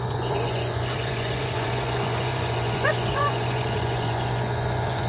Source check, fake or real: fake